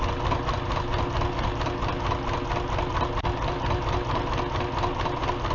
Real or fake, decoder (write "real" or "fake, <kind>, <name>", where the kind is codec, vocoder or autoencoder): real